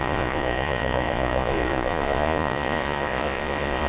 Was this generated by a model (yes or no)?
yes